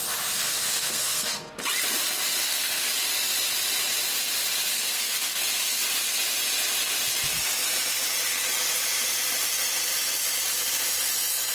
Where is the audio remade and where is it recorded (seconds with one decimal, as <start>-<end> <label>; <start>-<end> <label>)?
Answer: 0.0-0.4 recorded; 0.4-1.5 remade; 1.5-2.4 recorded; 2.4-2.9 remade; 2.9-4.7 recorded; 4.7-5.4 remade; 5.4-11.5 recorded